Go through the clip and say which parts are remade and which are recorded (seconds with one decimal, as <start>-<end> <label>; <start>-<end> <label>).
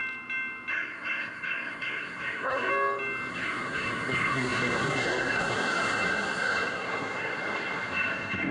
0.0-0.7 recorded; 0.7-2.7 remade; 2.7-3.3 recorded; 3.3-8.5 remade